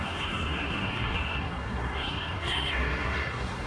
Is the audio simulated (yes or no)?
yes